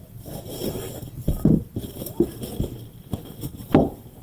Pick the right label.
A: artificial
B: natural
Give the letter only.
B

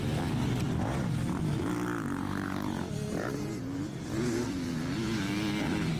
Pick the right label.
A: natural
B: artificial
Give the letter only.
A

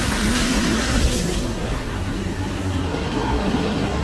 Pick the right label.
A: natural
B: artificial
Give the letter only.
B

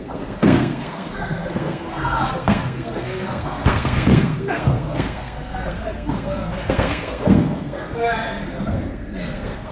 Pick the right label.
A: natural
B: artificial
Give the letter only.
B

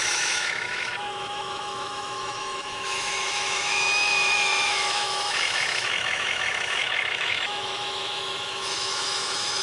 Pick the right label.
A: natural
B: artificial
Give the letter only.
B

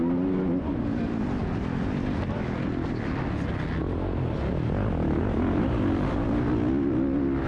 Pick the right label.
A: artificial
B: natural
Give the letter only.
B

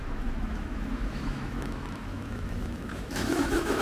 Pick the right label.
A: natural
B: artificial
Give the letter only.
B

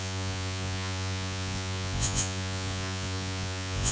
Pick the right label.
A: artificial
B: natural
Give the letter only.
A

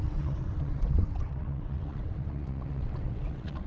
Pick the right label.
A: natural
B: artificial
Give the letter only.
B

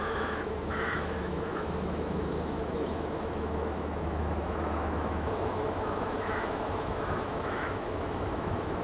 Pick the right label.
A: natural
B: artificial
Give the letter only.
B